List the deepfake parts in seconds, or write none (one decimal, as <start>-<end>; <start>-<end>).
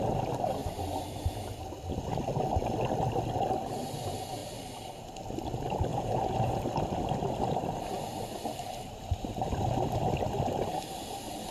5.9-6.6